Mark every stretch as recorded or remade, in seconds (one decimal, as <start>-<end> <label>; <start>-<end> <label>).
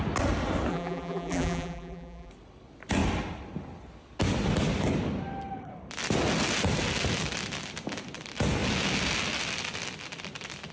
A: 0.0-0.7 recorded; 0.7-2.3 remade; 2.3-10.7 recorded